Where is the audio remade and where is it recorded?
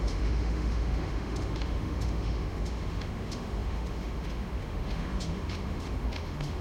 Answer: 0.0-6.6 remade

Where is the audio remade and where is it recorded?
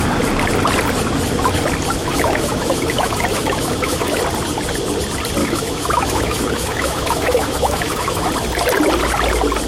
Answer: 0.0-2.0 recorded; 2.0-4.2 remade; 4.2-5.4 recorded; 5.4-8.3 remade; 8.3-9.7 recorded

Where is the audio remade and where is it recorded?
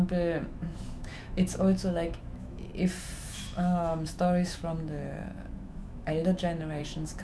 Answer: 0.0-2.7 remade; 2.7-3.2 recorded; 3.2-7.2 remade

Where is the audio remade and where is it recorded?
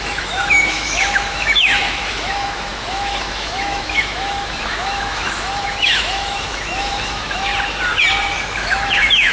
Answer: 0.0-7.5 remade; 7.5-8.4 recorded; 8.4-9.3 remade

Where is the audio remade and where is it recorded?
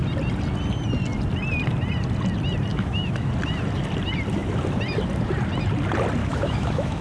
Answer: 0.0-2.7 recorded; 2.7-3.3 remade; 3.3-6.2 recorded; 6.2-7.0 remade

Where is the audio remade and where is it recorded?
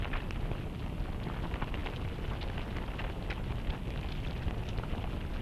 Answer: 0.0-5.4 recorded